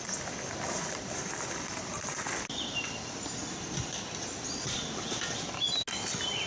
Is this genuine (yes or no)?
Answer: yes